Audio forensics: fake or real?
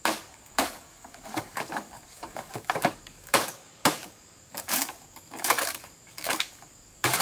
fake